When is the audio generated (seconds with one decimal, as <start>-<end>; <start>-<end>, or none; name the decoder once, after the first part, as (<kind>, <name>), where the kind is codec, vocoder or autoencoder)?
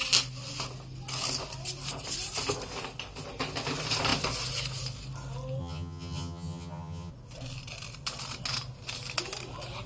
5.6-7.1 (vocoder, HiFi-GAN)